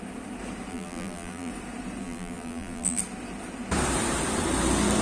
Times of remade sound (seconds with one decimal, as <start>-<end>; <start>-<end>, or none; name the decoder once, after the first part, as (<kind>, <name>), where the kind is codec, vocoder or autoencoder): 0.7-1.5 (vocoder, BigVGAN v2); 2.0-3.0